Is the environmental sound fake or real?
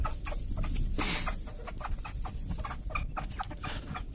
real